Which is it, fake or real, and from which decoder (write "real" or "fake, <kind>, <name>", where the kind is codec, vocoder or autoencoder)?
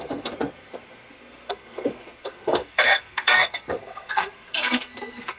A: fake, codec, SNAC